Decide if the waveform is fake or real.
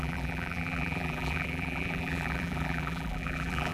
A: fake